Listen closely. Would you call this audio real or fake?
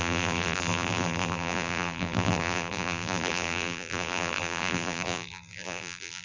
fake